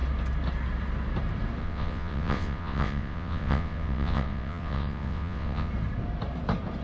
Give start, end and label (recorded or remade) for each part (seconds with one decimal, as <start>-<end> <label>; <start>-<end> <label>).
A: 0.0-1.6 recorded; 1.6-5.7 remade; 5.7-6.8 recorded